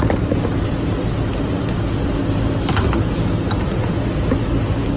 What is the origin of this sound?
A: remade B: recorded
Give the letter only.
B